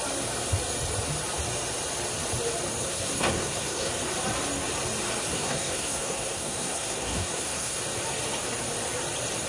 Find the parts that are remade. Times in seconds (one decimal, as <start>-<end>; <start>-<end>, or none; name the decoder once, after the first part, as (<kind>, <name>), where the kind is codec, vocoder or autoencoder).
2.8-3.9 (codec, SNAC); 5.3-7.8